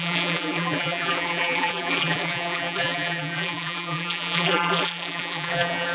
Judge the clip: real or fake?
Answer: fake